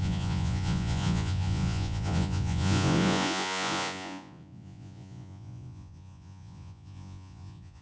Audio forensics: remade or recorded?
remade